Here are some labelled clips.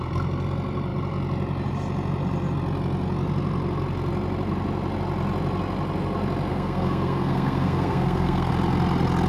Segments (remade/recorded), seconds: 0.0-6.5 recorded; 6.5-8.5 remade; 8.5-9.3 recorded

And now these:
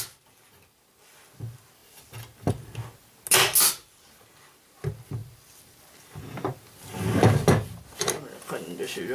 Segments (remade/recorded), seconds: 0.0-9.1 recorded

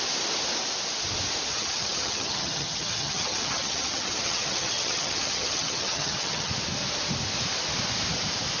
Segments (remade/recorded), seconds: 0.0-1.5 recorded; 1.5-6.5 remade; 6.5-8.6 recorded